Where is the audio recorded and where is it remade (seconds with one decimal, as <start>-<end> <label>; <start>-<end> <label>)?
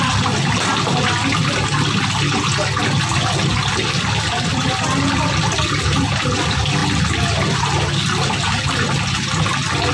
0.0-9.9 recorded